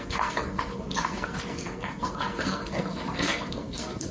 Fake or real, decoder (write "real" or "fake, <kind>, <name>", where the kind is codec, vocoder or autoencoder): fake, codec, SNAC